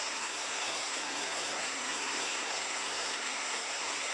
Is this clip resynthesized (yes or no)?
yes